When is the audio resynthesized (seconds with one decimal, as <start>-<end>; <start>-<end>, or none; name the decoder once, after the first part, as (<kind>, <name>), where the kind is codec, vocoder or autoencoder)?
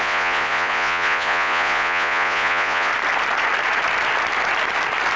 0.0-2.9 (vocoder, Vocos)